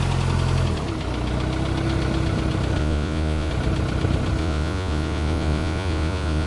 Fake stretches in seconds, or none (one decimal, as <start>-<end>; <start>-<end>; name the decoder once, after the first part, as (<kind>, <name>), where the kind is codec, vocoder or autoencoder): 2.8-3.5 (vocoder, Vocos); 4.4-6.5